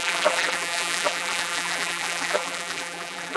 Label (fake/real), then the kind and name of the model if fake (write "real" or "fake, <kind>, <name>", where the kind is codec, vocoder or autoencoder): fake, vocoder, BigVGAN v2